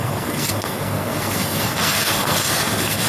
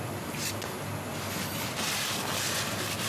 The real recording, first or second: second